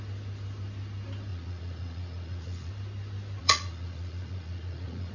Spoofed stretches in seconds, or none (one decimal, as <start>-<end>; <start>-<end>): 1.3-2.7; 3.4-5.1